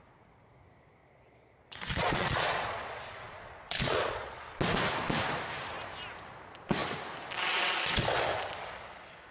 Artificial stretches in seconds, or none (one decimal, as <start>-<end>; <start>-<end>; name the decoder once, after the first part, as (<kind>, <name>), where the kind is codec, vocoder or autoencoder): 1.0-4.4 (vocoder, Vocos)